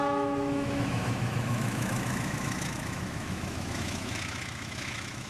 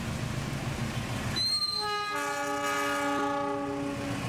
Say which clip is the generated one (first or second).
first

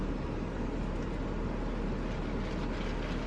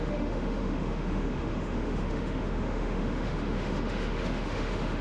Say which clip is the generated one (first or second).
second